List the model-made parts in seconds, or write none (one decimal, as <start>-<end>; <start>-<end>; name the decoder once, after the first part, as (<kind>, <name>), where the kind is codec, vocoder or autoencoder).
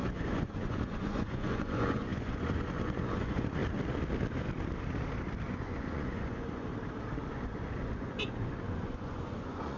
0.0-3.6 (vocoder, Vocos); 5.5-6.7; 7.3-9.8